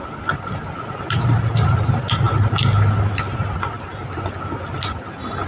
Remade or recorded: recorded